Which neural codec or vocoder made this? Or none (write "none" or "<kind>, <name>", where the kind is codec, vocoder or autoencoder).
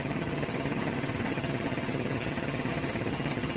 vocoder, HiFi-GAN